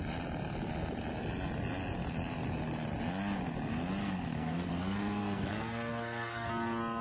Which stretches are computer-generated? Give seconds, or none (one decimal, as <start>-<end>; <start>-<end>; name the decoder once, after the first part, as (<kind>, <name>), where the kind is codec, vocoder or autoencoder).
4.0-4.7 (codec, SNAC); 5.2-6.5